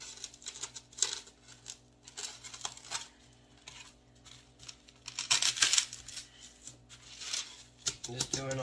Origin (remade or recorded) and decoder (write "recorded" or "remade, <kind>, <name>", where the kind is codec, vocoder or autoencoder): recorded